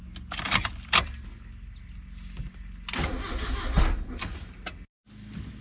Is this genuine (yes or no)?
yes